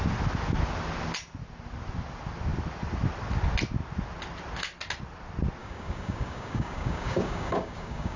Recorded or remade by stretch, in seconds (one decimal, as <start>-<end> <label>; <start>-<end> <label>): 0.0-5.6 recorded; 5.6-8.2 remade